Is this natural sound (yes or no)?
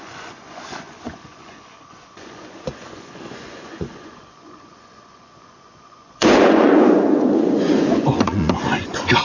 no